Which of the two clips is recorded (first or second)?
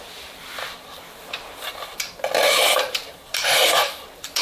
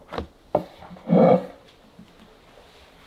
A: second